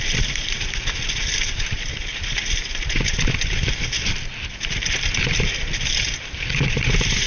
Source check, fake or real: real